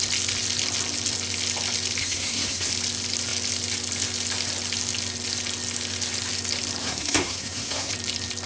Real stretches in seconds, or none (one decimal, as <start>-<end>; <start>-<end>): 0.0-2.0; 2.7-6.8; 7.9-8.5